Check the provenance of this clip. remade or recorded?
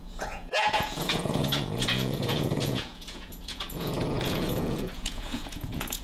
remade